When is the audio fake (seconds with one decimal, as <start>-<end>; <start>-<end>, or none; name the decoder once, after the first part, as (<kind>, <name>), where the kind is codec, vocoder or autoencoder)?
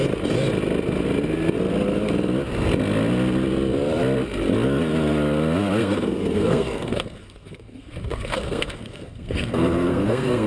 5.8-10.5 (codec, SNAC)